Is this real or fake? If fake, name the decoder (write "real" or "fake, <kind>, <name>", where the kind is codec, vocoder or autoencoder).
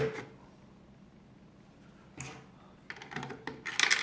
real